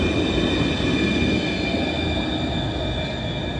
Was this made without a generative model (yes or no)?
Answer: yes